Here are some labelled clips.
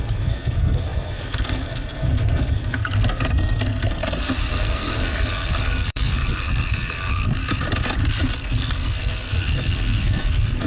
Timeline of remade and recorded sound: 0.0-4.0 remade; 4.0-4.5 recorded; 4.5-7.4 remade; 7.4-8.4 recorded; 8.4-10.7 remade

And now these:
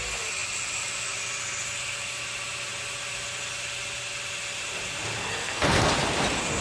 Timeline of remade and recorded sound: 0.0-5.2 recorded; 5.2-5.9 remade; 5.9-6.6 recorded

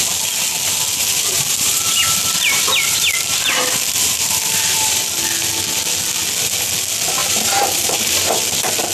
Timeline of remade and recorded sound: 0.0-1.0 recorded; 1.0-5.0 remade; 5.0-7.2 recorded; 7.2-8.4 remade; 8.4-8.9 recorded

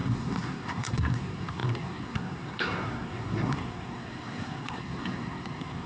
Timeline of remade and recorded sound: 0.0-5.9 remade

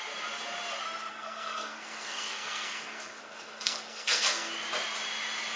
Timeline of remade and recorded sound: 0.0-1.1 recorded; 1.1-4.5 remade; 4.5-5.6 recorded